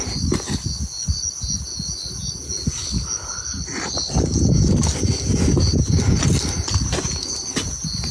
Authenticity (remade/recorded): recorded